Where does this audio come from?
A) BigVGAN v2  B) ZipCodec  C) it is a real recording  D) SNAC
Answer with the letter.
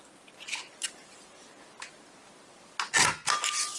C